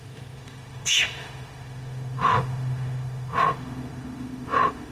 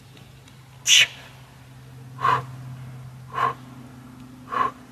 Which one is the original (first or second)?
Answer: second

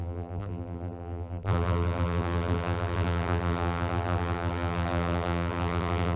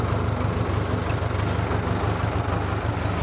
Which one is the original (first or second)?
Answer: second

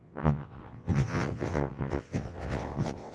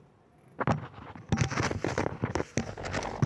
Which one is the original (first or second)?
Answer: second